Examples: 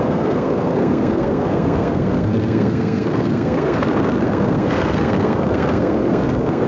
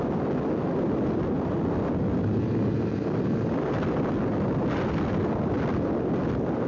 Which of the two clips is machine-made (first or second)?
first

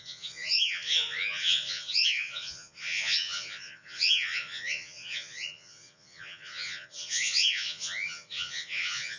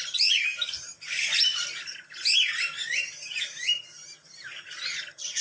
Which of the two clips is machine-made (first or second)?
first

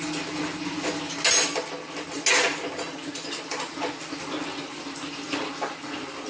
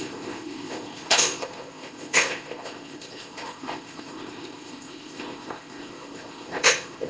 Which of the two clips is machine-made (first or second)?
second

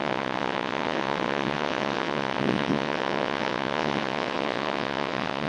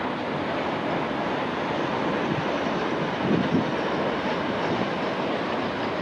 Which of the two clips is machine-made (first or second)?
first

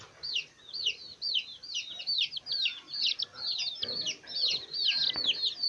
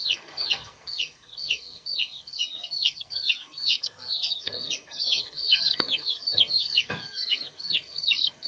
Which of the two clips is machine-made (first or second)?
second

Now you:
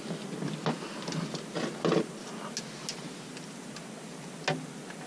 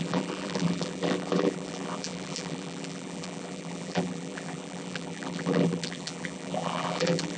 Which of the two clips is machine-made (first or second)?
second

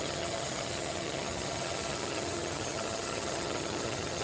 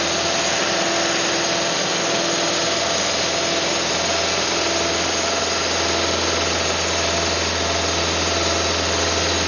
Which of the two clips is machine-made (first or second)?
first